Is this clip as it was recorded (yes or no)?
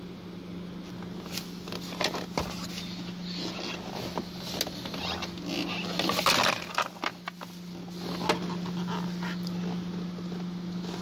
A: yes